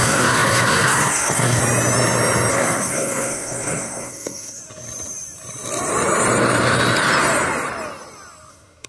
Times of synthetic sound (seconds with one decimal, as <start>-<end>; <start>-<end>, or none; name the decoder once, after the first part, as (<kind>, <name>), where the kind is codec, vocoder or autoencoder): 0.0-1.6 (codec, SNAC); 2.5-4.6; 8.5-8.9